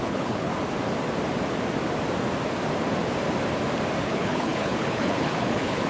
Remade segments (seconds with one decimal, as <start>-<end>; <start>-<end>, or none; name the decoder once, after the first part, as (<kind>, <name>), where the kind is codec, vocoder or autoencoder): 0.0-0.5 (codec, HILCodec); 4.0-5.9